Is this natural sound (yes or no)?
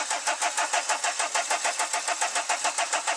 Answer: yes